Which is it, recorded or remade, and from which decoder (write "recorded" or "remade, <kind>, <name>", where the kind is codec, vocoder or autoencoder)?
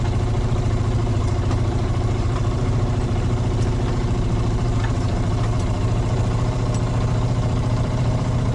remade, vocoder, BigVGAN v2